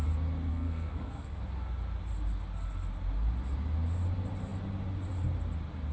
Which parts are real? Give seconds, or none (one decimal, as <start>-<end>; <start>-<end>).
0.0-0.5; 1.4-5.9